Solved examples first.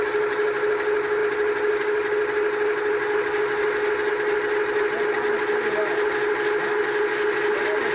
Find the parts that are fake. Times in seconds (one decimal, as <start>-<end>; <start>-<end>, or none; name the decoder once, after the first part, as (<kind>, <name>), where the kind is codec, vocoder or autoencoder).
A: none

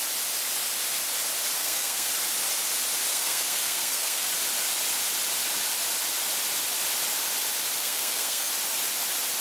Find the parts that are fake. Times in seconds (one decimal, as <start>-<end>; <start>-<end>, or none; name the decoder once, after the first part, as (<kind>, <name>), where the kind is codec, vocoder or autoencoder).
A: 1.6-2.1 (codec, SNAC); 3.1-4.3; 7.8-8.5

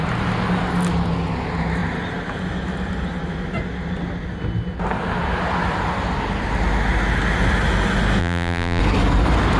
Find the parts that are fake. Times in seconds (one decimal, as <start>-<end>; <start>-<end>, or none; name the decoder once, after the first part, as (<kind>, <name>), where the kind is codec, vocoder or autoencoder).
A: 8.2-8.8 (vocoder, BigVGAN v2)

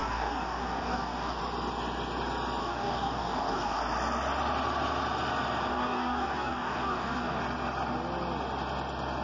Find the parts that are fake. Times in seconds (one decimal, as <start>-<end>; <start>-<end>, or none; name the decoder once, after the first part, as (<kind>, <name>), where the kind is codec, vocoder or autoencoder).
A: 0.0-1.4 (codec, DAC); 2.6-3.8; 5.7-7.4